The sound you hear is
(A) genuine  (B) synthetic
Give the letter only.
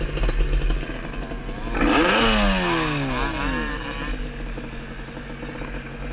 A